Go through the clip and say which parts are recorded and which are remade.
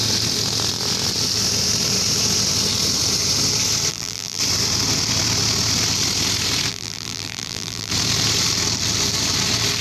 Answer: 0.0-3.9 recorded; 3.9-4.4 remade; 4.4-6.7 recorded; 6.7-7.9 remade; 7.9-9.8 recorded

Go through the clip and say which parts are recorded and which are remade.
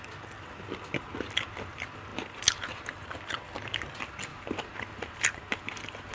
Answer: 0.0-2.1 recorded; 2.1-3.2 remade; 3.2-4.3 recorded; 4.3-6.1 remade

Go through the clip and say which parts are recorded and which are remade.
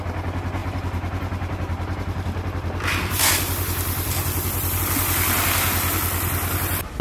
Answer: 0.0-0.6 recorded; 0.6-4.8 remade; 4.8-7.0 recorded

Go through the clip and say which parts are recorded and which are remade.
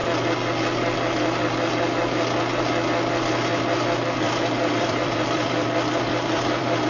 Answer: 0.0-4.1 recorded; 4.1-6.9 remade